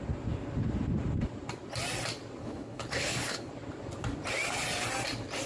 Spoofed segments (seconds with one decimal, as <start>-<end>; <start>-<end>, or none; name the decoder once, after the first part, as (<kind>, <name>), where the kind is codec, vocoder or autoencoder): 2.4-3.5 (codec, HILCodec)